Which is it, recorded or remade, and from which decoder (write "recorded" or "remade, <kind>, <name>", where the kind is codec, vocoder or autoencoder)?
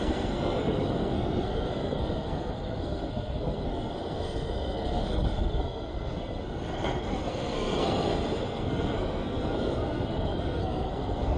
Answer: remade, codec, SNAC